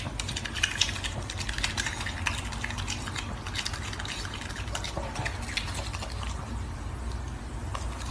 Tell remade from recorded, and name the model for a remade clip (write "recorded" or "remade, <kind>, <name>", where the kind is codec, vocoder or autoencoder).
recorded